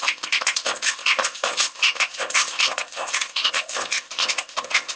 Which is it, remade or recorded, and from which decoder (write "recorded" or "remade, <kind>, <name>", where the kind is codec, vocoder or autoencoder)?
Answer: remade, codec, ZipCodec